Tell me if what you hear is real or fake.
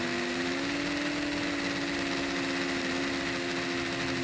real